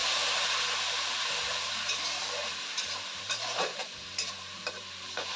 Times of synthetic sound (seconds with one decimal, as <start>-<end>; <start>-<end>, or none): 0.0-5.4